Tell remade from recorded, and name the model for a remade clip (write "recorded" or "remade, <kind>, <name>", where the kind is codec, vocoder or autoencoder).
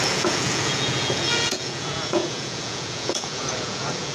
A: remade, vocoder, Vocos